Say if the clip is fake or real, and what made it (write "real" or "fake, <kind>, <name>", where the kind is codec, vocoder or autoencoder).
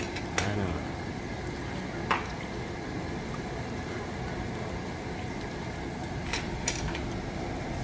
real